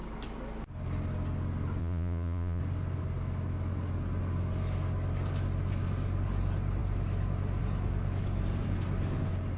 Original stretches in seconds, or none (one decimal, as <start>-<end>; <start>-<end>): 0.0-1.8; 2.6-9.6